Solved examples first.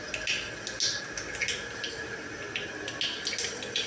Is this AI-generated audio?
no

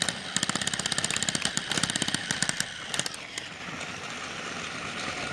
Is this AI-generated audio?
no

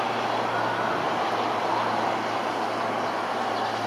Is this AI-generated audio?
no